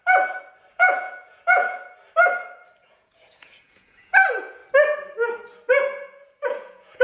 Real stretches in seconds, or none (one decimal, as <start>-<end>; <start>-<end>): 0.0-0.7; 1.8-2.8; 4.6-5.7